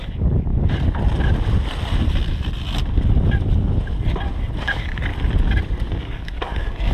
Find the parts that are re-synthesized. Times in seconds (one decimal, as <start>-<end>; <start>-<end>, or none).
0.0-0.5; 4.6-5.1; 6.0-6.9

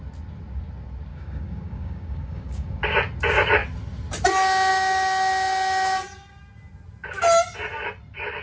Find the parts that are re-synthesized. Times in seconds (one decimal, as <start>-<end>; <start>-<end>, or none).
1.1-2.8

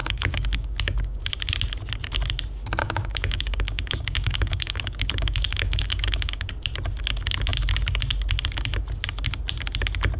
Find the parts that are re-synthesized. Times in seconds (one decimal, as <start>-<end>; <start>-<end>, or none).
0.0-1.2; 2.8-6.5

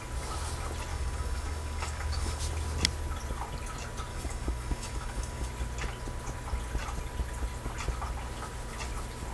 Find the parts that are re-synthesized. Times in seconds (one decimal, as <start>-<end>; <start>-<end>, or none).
0.9-2.4; 4.1-5.5

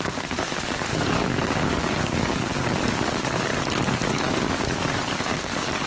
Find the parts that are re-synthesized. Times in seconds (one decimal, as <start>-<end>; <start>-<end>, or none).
0.0-3.5; 4.1-5.9

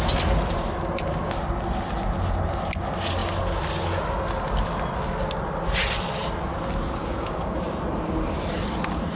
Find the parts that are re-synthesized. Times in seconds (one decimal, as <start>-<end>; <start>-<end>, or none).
7.0-7.6